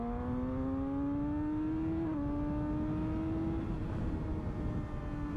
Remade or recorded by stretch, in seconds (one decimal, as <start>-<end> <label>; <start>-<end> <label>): 0.0-5.4 recorded